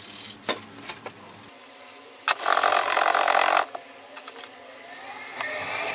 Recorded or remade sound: recorded